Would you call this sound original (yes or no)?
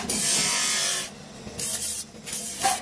yes